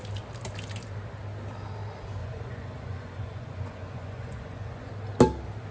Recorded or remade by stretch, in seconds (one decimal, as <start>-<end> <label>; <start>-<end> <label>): 0.0-2.2 recorded; 2.2-4.9 remade; 4.9-5.7 recorded